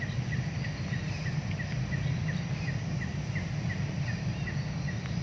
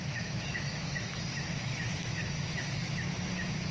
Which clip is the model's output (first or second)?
second